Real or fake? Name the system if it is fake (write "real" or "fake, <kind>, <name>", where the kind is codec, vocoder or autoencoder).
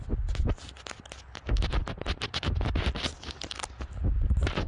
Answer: real